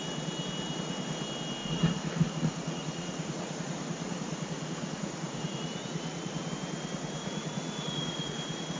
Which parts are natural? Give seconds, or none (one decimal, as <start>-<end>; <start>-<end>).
0.0-1.6; 6.5-7.2